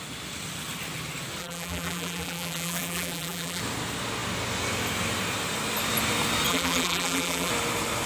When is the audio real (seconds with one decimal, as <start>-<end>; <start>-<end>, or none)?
0.0-1.4; 3.6-6.5; 7.5-8.1